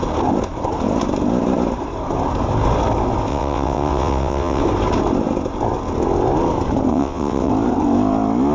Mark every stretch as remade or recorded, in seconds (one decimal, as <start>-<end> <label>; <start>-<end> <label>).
0.0-3.3 recorded; 3.3-4.6 remade; 4.6-6.9 recorded; 6.9-7.5 remade; 7.5-8.5 recorded